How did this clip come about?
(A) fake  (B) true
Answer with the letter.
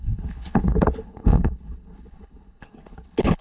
A